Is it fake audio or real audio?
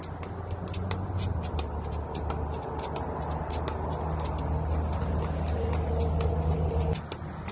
real